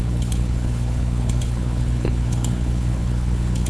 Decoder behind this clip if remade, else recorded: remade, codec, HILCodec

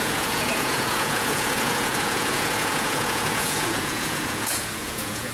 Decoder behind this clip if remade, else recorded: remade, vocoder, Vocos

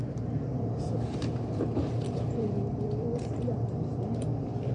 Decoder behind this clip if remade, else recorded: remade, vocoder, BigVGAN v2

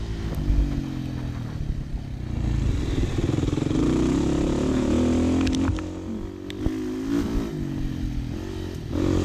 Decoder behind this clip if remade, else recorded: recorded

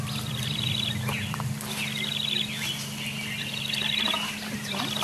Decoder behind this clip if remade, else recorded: recorded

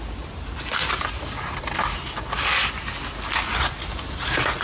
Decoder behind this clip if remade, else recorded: recorded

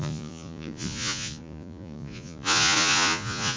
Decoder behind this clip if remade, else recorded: remade, vocoder, Vocos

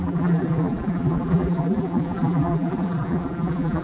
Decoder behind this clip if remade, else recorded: remade, vocoder, BigVGAN v2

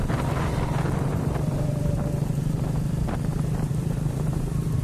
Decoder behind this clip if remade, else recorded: remade, vocoder, BigVGAN v2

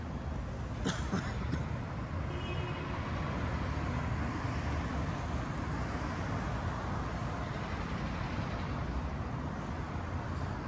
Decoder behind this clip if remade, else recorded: recorded